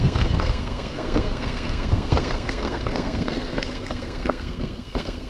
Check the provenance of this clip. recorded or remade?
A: remade